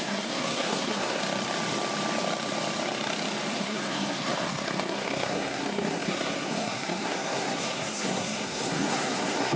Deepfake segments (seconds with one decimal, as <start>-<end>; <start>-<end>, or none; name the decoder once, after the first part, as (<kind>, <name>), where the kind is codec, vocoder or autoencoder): 0.0-1.2 (codec, SNAC); 3.6-9.6